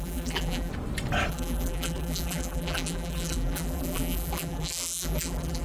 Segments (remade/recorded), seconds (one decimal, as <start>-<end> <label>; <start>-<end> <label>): 0.0-0.7 remade; 0.7-1.3 recorded; 1.3-5.6 remade